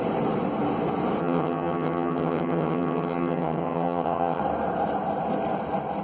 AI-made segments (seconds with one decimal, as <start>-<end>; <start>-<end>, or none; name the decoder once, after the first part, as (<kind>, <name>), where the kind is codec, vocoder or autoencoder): 1.2-4.4 (vocoder, HiFi-GAN)